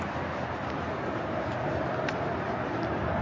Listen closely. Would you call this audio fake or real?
real